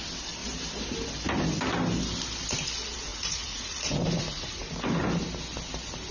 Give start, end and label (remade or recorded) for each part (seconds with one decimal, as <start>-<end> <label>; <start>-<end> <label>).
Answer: 0.0-3.1 recorded; 3.1-5.0 remade; 5.0-6.1 recorded